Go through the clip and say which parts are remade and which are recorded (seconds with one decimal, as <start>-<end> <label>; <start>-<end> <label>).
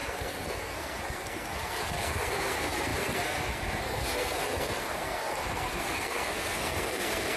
0.0-7.4 remade